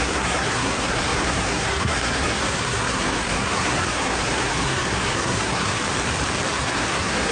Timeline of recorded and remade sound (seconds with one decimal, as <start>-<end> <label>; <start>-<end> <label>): 0.0-5.8 remade; 5.8-6.5 recorded; 6.5-7.3 remade